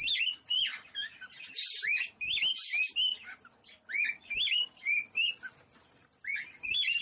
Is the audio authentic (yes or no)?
yes